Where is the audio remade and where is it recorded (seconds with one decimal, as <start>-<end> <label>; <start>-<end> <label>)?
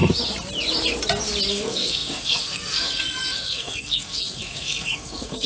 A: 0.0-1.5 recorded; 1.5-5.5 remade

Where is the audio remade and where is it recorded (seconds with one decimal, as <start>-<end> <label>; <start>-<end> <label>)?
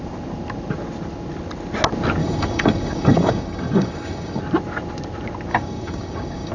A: 0.0-2.2 recorded; 2.2-4.4 remade; 4.4-5.5 recorded; 5.5-6.5 remade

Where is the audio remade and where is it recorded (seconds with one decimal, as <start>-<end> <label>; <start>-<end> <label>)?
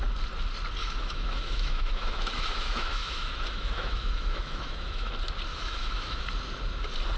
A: 0.0-0.8 recorded; 0.8-5.1 remade; 5.1-5.5 recorded; 5.5-6.2 remade; 6.2-7.2 recorded